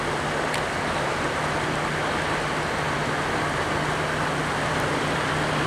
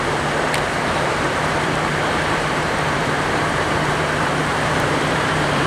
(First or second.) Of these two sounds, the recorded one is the first